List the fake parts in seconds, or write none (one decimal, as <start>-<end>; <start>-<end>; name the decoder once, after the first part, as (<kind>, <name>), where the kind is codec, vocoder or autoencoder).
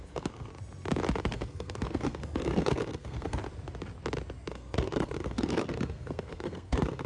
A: 0.0-0.5 (codec, SNAC); 1.2-3.4; 4.5-7.1